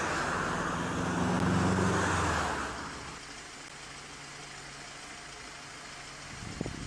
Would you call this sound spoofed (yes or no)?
no